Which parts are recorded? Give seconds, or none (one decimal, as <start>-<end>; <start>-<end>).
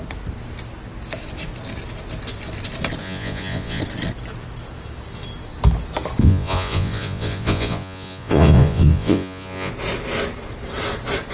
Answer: 0.0-3.0; 3.8-6.2; 9.7-11.3